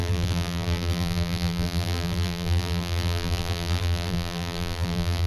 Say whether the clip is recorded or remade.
remade